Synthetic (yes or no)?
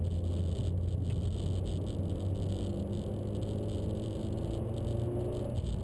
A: no